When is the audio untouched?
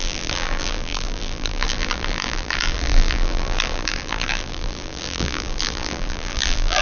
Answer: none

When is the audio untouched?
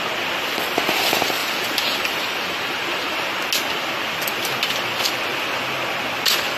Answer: 0.0-1.4; 3.3-6.6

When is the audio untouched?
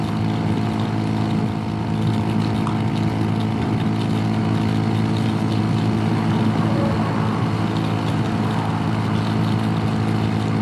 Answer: 0.0-10.6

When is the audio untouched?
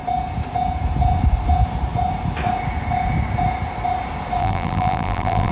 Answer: 0.0-4.4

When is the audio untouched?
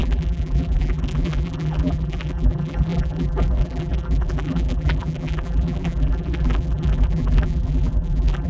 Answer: none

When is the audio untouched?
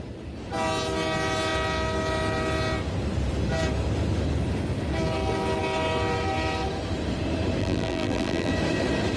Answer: 0.0-7.6; 8.5-9.2